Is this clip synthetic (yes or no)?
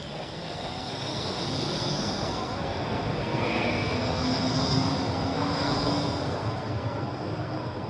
yes